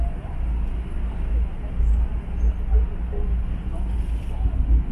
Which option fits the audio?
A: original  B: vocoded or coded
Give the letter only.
A